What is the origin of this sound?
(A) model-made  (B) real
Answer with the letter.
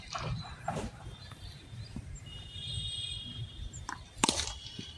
A